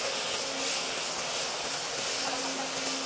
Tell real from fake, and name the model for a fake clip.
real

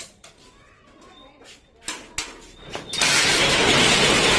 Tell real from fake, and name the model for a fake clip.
real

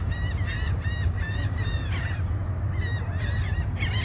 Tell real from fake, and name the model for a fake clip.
real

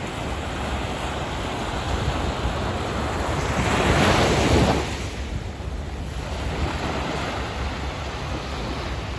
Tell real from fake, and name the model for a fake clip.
real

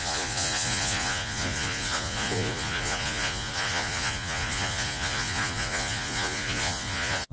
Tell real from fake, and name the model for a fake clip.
fake, vocoder, Vocos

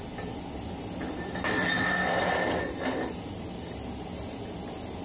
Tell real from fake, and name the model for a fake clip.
real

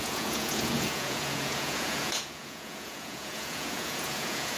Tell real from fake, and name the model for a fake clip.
fake, vocoder, Vocos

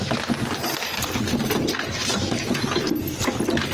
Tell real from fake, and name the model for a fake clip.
real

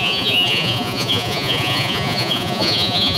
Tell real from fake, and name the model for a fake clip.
fake, vocoder, Vocos